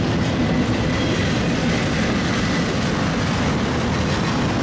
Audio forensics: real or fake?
real